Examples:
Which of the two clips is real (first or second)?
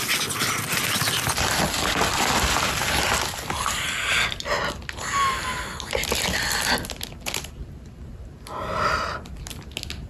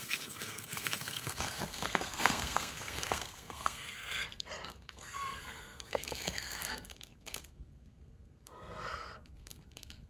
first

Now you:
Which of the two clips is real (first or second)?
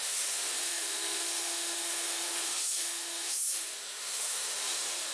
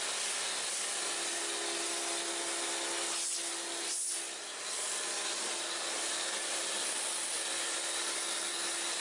second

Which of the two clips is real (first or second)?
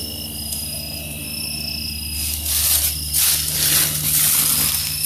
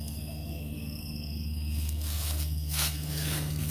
first